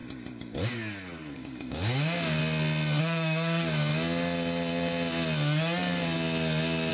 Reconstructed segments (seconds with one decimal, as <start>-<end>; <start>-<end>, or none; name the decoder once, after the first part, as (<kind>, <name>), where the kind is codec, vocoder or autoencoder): 1.3-2.4 (codec, DAC); 3.0-3.9